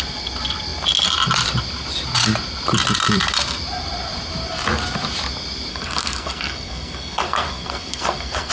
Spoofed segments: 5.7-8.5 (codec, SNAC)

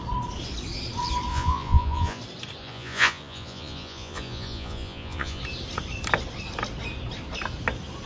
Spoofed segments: 1.3-2.2 (vocoder, Vocos); 2.6-5.4